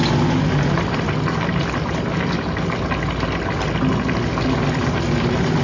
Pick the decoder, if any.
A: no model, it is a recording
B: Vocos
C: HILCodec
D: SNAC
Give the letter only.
A